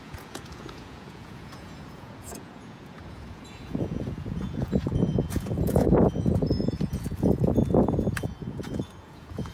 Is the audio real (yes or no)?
no